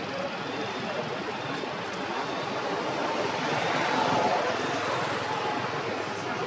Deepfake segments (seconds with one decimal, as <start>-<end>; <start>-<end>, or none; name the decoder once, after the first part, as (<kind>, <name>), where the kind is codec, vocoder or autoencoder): 3.0-3.7 (vocoder, BigVGAN v2)